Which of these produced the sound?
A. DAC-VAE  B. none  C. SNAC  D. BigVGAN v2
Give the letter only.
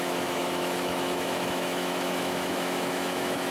A